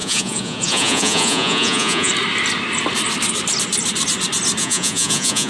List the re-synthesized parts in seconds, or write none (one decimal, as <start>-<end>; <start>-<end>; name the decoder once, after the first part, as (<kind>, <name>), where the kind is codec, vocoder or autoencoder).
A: 0.0-2.1 (vocoder, Vocos); 4.6-5.5